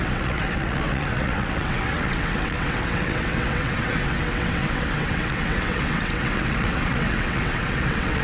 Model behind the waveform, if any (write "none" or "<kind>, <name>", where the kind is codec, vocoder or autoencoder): vocoder, WaveNeXt